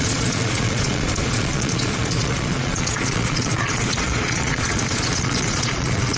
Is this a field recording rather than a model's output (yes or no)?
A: no